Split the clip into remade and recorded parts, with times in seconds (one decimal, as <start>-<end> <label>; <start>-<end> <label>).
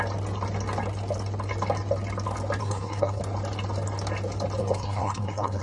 0.0-2.6 recorded; 2.6-3.2 remade; 3.2-4.6 recorded; 4.6-5.6 remade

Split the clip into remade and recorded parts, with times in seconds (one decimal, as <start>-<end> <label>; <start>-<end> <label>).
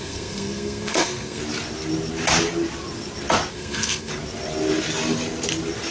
0.0-1.4 remade; 1.4-3.5 recorded; 3.5-4.1 remade; 4.1-5.9 recorded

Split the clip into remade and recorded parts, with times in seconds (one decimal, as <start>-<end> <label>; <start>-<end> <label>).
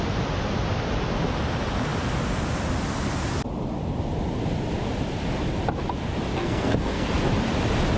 0.0-6.4 recorded; 6.4-7.1 remade; 7.1-8.0 recorded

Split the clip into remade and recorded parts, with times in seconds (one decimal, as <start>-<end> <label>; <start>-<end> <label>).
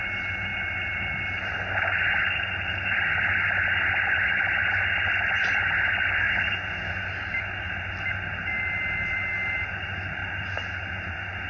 0.0-11.5 recorded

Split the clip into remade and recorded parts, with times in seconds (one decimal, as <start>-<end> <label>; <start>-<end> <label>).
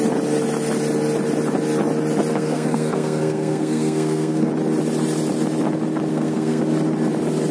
0.0-2.3 recorded; 2.3-4.5 remade; 4.5-6.1 recorded; 6.1-6.6 remade; 6.6-7.5 recorded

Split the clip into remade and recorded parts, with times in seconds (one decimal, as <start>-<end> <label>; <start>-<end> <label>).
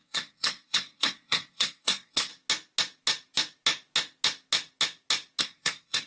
0.0-2.3 remade; 2.3-5.4 recorded; 5.4-6.1 remade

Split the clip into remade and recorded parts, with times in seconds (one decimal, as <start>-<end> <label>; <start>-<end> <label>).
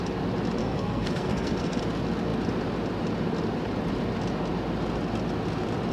0.0-0.6 recorded; 0.6-1.8 remade; 1.8-5.9 recorded